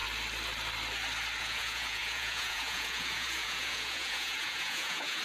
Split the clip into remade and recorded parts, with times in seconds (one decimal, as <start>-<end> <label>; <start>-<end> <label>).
0.0-1.4 recorded; 1.4-5.2 remade